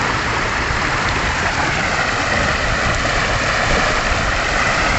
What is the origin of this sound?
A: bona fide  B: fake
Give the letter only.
B